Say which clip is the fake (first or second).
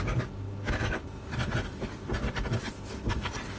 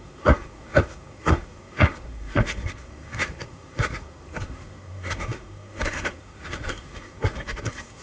second